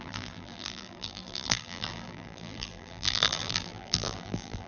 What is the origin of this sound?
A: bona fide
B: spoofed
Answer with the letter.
B